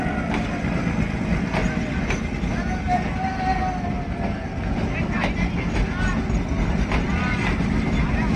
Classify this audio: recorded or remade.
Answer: recorded